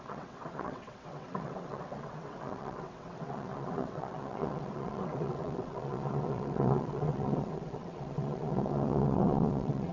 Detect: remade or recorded remade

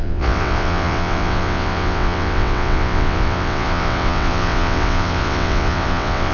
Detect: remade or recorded remade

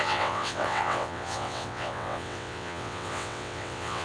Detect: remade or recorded remade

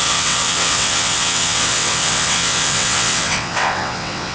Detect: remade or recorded remade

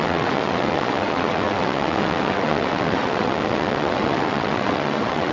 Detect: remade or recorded remade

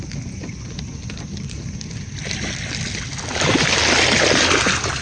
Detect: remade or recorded recorded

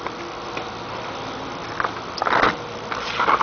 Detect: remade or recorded recorded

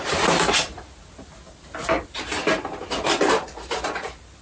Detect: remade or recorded recorded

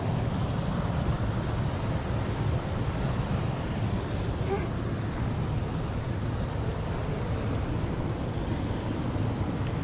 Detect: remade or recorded recorded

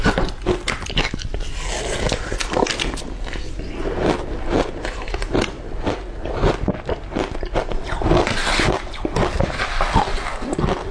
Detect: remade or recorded recorded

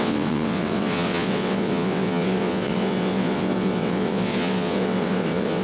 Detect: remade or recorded remade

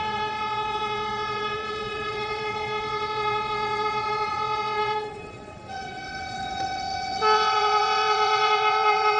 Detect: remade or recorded remade